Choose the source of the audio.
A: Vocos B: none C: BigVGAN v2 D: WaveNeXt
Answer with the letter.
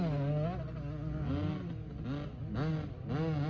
B